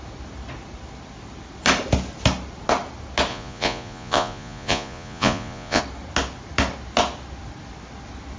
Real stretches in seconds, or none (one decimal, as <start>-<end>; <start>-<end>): 0.0-3.3; 5.8-8.4